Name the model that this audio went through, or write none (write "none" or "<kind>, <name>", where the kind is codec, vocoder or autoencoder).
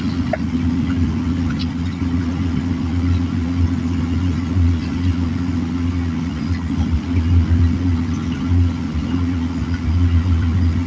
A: vocoder, Vocos